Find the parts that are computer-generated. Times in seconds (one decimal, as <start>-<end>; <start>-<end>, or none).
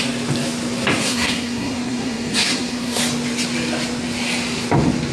1.0-3.0